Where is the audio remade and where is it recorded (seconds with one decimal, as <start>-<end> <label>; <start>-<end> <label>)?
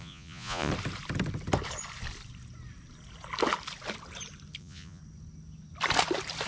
0.0-0.7 remade; 0.7-4.6 recorded; 4.6-5.0 remade; 5.0-6.5 recorded